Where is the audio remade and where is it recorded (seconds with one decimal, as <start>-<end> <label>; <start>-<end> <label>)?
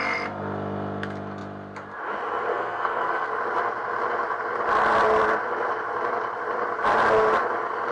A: 0.0-2.5 recorded; 2.5-3.3 remade; 3.3-7.9 recorded